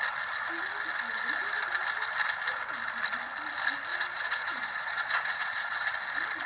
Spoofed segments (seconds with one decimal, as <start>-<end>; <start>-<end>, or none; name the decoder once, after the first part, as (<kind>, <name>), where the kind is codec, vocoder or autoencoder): 3.9-5.9 (vocoder, Vocos)